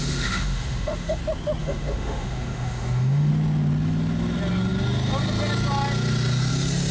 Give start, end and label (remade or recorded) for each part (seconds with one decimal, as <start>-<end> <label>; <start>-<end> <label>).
0.0-1.2 remade; 1.2-1.6 recorded; 1.6-3.3 remade; 3.3-6.9 recorded